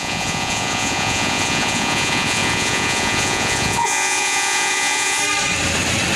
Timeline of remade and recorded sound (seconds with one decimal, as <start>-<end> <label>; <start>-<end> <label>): 0.0-5.2 remade; 5.2-6.2 recorded